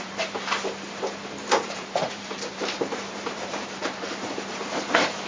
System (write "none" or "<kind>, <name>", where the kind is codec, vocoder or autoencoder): vocoder, BigVGAN v2